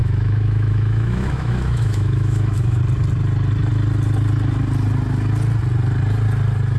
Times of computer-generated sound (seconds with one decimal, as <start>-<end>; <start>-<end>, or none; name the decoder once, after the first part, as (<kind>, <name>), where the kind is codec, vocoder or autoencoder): 0.0-2.8 (autoencoder, DAC-VAE)